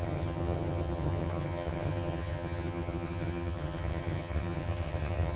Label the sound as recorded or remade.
remade